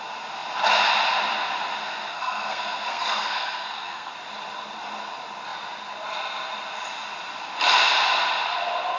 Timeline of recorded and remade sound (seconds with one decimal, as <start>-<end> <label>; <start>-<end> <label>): 0.0-1.8 recorded; 1.8-4.1 remade; 4.1-9.0 recorded